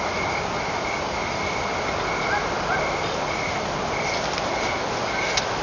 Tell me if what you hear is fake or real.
real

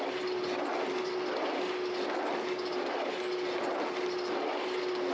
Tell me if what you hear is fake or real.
real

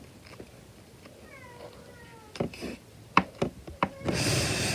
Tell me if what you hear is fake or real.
real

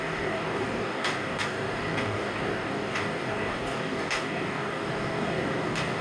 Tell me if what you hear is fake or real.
fake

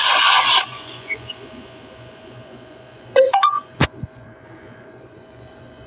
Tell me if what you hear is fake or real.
fake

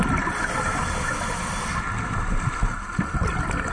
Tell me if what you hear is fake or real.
real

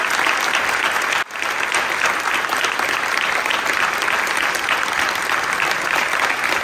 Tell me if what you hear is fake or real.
real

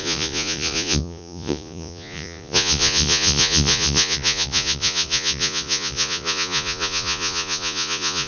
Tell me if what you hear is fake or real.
fake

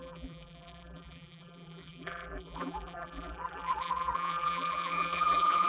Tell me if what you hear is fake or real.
fake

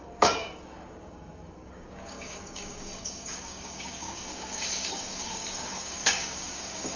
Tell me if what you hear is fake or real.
fake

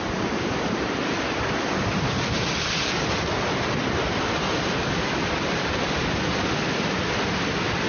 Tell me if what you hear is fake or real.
real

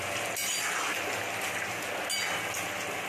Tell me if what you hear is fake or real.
real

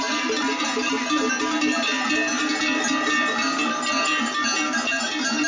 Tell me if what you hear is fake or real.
real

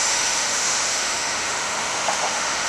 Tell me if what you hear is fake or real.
fake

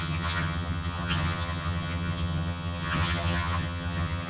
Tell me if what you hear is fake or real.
fake